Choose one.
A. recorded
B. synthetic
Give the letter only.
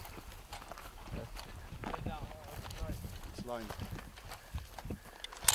A